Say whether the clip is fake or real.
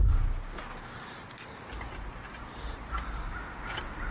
real